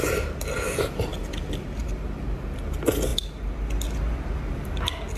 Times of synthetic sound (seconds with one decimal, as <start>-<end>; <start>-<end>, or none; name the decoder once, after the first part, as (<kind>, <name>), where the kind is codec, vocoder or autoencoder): none